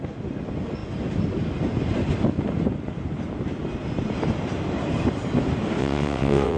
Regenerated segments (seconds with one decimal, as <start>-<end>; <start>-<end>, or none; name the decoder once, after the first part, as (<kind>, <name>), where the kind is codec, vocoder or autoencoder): 5.8-6.6 (vocoder, WaveNeXt)